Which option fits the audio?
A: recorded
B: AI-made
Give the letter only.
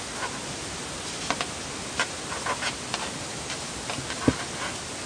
A